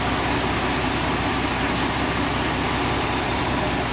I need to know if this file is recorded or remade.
recorded